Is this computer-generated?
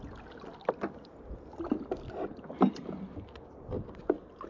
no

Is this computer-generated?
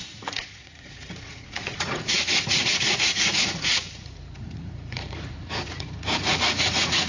yes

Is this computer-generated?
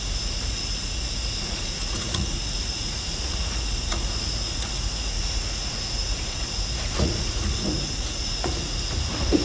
yes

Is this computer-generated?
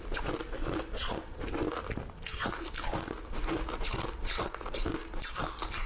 no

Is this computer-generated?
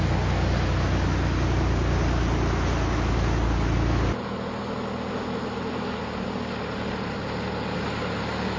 no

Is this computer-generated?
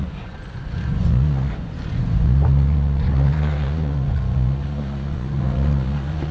yes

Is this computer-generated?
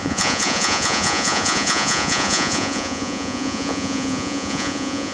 yes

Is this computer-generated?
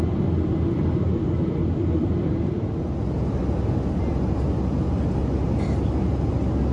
no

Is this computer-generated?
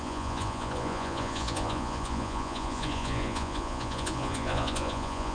yes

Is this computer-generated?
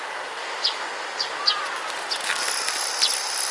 no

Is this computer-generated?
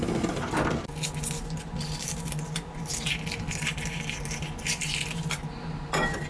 no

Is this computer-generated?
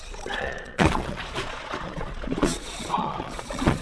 yes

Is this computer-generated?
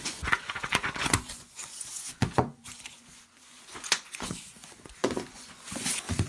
yes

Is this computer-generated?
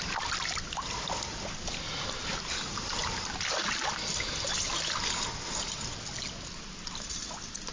no